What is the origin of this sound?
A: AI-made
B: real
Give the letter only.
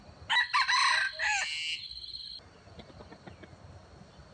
B